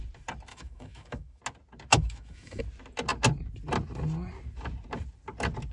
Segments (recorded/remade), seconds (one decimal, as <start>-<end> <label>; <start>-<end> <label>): 0.0-0.5 recorded; 0.5-1.4 remade; 1.4-1.9 recorded; 1.9-2.6 remade; 2.6-5.7 recorded